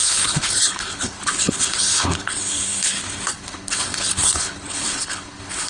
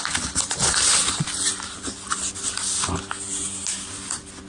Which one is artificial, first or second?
first